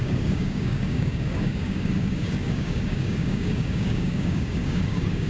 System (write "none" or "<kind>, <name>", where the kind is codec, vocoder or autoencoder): codec, DAC